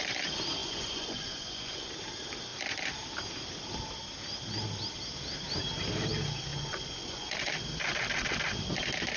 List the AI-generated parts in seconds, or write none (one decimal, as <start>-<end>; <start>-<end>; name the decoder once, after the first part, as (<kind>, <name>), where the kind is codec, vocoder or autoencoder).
0.6-1.9 (vocoder, Vocos); 6.5-7.5